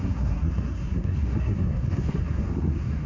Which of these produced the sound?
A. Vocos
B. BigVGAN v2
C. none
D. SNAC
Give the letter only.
D